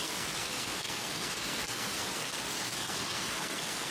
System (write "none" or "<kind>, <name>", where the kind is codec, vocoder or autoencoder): codec, SNAC